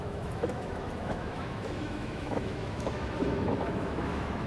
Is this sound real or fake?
fake